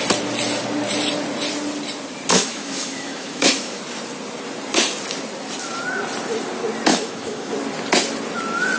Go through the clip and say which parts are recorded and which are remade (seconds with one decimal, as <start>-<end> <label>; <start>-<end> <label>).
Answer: 0.0-2.3 recorded; 2.3-3.8 remade; 3.8-6.9 recorded; 6.9-7.5 remade; 7.5-8.8 recorded